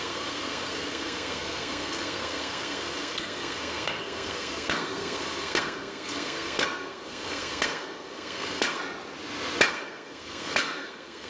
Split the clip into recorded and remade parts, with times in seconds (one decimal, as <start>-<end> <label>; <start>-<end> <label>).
0.0-8.8 remade; 8.8-9.7 recorded; 9.7-11.3 remade